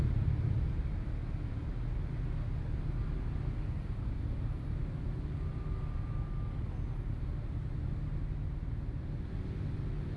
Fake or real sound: real